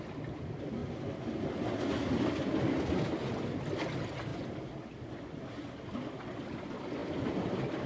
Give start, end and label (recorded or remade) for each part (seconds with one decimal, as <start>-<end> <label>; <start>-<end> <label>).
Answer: 0.0-7.9 recorded